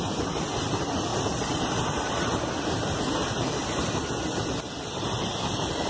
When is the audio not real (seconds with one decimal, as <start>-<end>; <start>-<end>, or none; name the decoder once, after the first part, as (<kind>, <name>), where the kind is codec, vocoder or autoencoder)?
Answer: 1.1-2.5 (vocoder, BigVGAN v2)